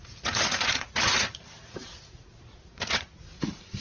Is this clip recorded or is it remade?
remade